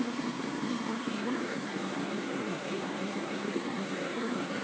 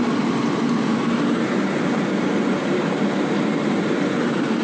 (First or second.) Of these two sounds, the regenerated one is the first